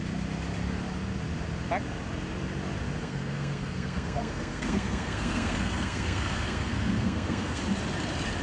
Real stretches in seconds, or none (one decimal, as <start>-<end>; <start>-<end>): 0.0-3.0; 7.6-8.4